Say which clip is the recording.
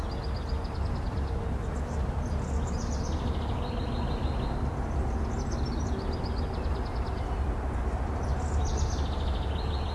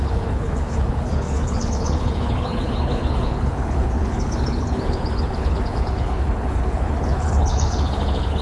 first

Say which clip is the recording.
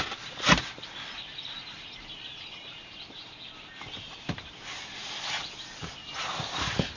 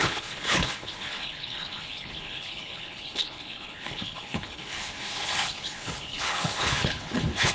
first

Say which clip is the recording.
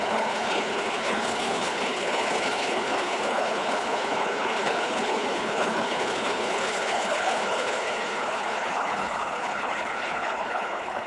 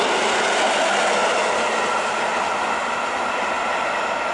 second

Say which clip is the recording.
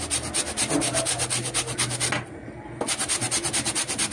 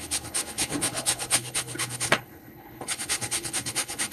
first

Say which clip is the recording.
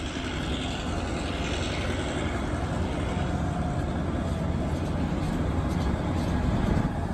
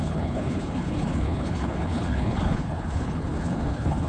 first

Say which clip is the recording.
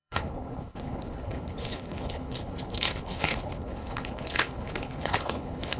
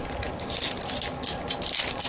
second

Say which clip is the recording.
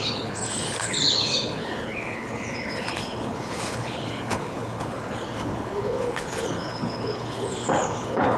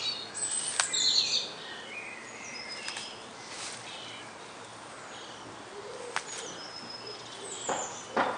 second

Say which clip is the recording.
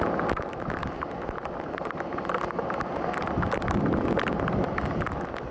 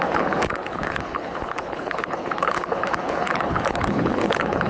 first